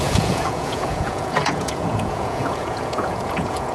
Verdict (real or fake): fake